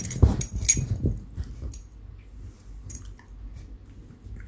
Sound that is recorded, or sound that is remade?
recorded